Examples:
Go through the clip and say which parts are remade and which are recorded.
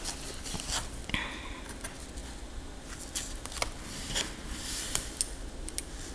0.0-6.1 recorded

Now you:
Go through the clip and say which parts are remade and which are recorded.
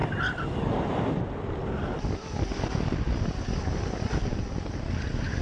0.0-5.4 recorded